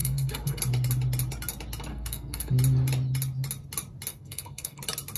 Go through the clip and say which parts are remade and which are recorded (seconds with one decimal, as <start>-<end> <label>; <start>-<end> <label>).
0.0-0.6 remade; 0.6-1.9 recorded; 1.9-2.5 remade; 2.5-4.1 recorded; 4.1-4.8 remade; 4.8-5.2 recorded